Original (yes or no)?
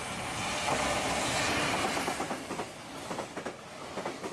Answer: yes